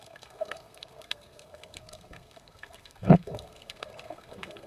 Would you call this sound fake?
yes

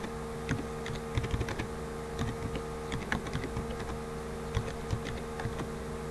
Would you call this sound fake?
no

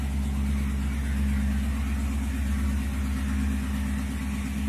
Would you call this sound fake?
no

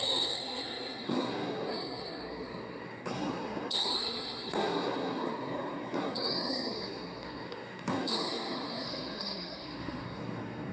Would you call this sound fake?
yes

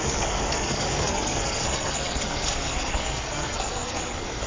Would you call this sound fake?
yes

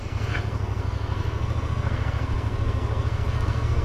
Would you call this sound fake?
yes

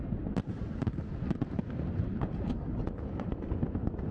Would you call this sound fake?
no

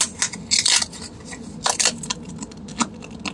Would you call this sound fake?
no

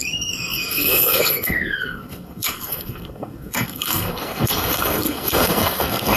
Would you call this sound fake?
yes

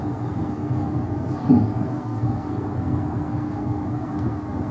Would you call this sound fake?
yes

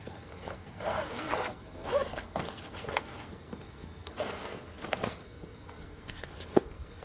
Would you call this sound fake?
yes